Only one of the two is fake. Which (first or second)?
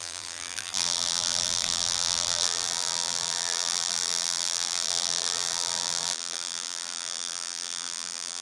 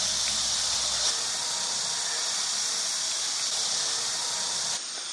first